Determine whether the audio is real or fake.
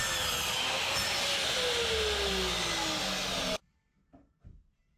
real